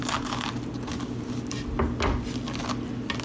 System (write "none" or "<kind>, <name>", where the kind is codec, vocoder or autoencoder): none